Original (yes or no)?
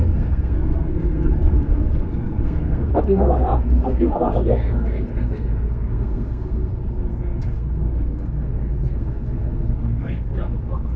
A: no